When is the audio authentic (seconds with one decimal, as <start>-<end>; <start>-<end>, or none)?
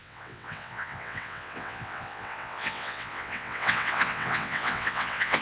none